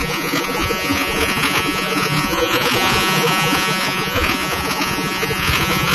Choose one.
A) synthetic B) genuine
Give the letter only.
A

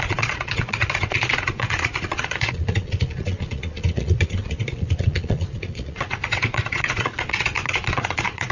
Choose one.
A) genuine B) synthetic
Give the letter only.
B